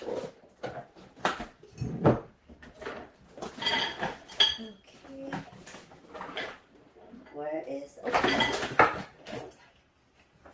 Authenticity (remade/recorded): recorded